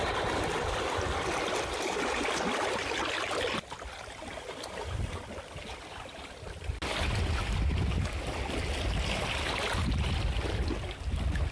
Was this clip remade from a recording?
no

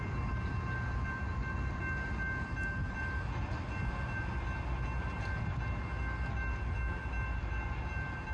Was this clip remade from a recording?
no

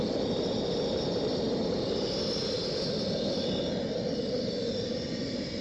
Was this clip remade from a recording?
no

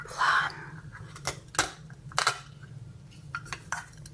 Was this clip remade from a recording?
no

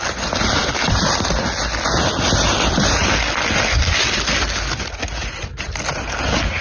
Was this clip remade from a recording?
no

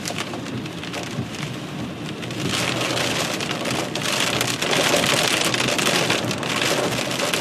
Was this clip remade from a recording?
no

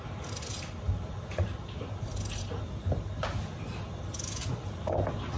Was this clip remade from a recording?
no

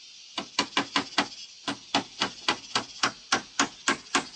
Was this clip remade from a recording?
no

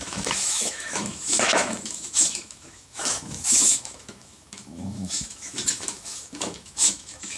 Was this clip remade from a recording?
yes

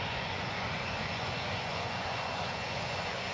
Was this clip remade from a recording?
yes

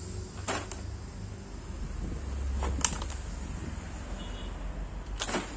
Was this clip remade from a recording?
no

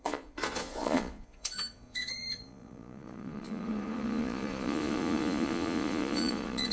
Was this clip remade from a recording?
yes